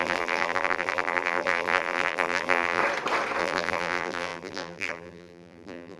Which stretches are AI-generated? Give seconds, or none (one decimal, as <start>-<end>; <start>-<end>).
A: 0.0-2.8; 3.4-6.0